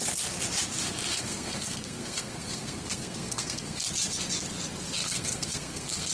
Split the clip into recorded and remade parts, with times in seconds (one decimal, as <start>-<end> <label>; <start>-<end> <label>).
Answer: 0.0-1.1 recorded; 1.1-3.9 remade; 3.9-5.0 recorded; 5.0-6.1 remade